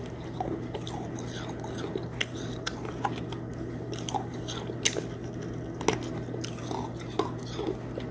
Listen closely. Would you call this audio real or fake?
real